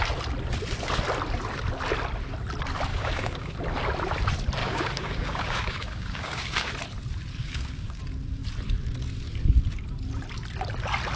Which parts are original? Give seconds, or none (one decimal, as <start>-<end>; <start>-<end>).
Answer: 0.0-2.9; 3.5-4.6; 6.7-7.4; 8.0-11.2